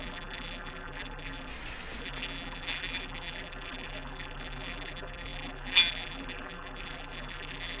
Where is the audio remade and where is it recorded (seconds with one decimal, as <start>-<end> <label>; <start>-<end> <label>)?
0.0-1.5 remade; 1.5-2.0 recorded; 2.0-7.8 remade